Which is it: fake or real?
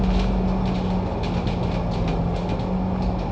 real